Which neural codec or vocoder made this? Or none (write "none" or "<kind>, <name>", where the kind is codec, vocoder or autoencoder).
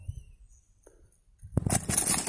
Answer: none